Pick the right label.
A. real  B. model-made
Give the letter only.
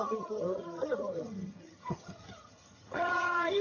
B